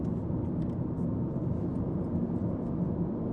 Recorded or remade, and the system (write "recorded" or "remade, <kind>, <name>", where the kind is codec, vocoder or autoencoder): recorded